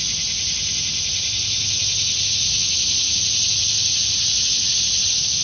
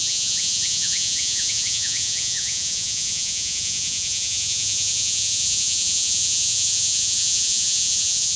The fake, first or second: second